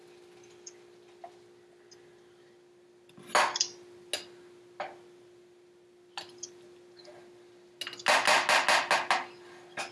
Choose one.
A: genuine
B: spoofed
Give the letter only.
A